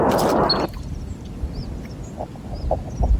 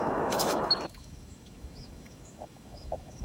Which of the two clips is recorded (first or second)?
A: first